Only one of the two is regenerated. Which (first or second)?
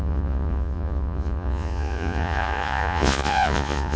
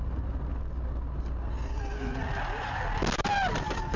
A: first